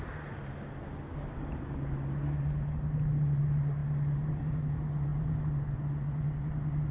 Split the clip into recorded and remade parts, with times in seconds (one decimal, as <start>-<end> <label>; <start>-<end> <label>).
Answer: 0.0-6.9 recorded